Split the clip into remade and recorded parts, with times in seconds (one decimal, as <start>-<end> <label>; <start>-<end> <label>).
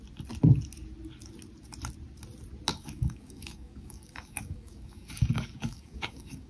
0.0-2.7 recorded; 2.7-6.5 remade